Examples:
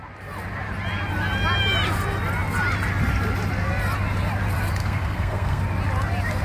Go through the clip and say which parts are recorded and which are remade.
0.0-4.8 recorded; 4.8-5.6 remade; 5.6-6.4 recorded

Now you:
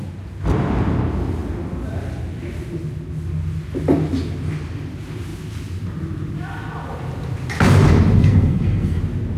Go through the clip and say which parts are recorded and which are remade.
0.0-8.2 recorded; 8.2-9.0 remade; 9.0-9.4 recorded

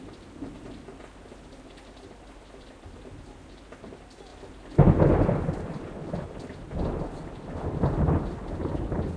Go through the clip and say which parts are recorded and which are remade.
0.0-9.2 recorded

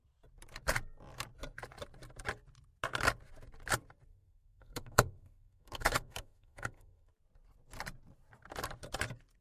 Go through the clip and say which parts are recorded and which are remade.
0.0-4.1 recorded; 4.1-7.1 remade; 7.1-9.4 recorded

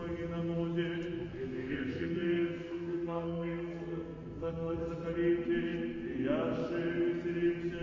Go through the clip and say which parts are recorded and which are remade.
0.0-1.3 recorded; 1.3-4.8 remade; 4.8-7.8 recorded

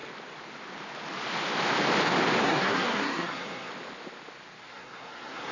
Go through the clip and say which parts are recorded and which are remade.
0.0-2.4 recorded; 2.4-3.7 remade; 3.7-4.6 recorded; 4.6-5.5 remade

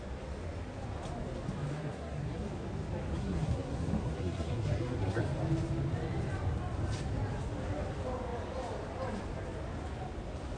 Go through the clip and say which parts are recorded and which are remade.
0.0-1.7 recorded; 1.7-2.5 remade; 2.5-3.2 recorded; 3.2-5.2 remade; 5.2-10.6 recorded